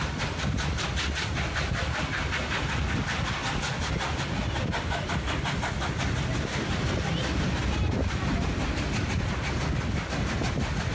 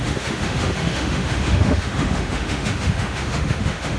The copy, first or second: second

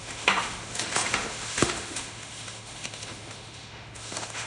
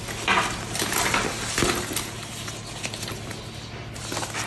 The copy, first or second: first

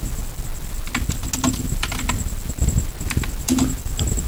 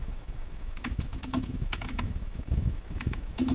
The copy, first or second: second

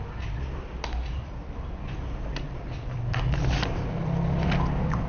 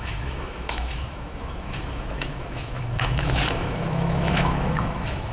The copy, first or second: second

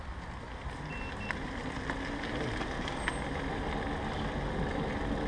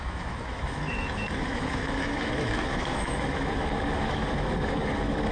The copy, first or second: second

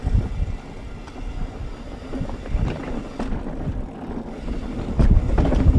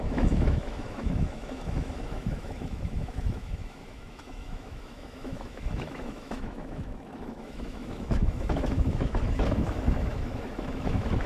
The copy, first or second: second